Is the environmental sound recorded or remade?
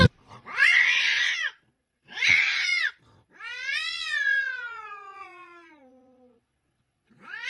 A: remade